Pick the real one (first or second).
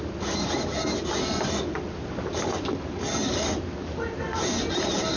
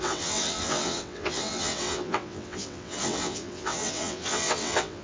first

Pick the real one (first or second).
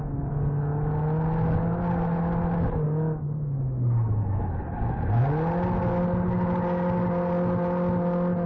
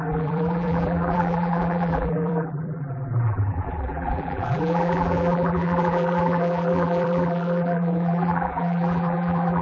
first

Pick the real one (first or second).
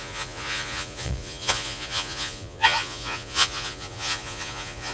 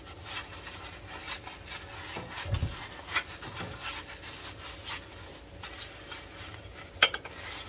second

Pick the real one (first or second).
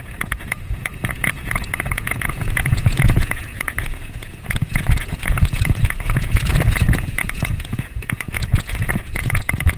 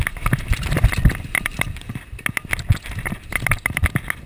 second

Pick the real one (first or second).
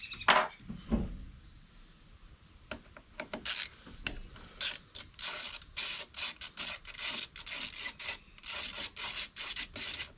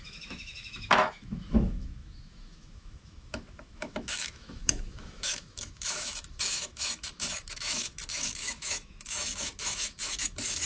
first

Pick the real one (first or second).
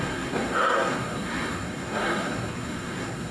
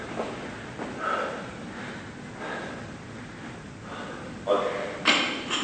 second